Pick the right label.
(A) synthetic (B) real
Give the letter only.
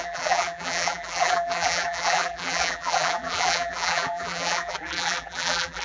A